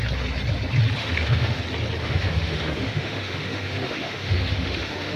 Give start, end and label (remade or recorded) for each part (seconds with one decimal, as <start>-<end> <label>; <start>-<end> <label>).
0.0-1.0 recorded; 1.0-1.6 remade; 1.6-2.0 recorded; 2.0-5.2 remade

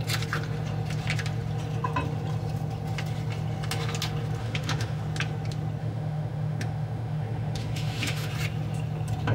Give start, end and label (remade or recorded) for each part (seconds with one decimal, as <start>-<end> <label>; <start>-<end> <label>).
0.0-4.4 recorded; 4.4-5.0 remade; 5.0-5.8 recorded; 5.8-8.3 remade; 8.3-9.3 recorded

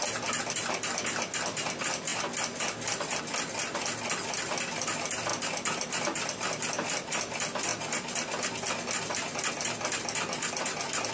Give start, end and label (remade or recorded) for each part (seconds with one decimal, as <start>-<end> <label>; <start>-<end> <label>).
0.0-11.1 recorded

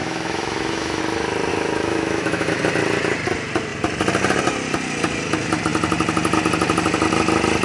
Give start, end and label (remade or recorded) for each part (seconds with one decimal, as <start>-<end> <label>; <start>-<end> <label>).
0.0-1.0 remade; 1.0-1.5 recorded; 1.5-2.6 remade; 2.6-7.6 recorded

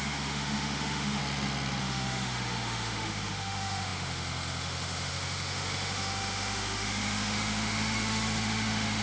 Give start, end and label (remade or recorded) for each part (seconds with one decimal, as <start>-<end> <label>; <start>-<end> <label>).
0.0-1.2 remade; 1.2-1.8 recorded; 1.8-9.0 remade

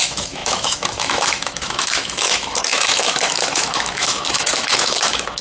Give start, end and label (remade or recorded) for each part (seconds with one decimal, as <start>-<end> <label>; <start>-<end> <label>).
0.0-5.4 remade